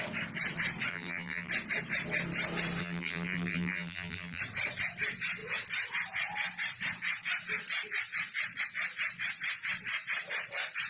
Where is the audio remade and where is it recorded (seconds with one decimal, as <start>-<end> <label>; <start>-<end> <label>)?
0.0-0.9 recorded; 0.9-1.5 remade; 1.5-2.8 recorded; 2.8-4.4 remade; 4.4-10.9 recorded